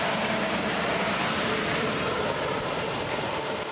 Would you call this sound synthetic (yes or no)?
yes